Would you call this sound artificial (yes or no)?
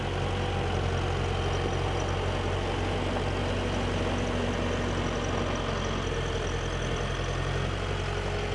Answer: no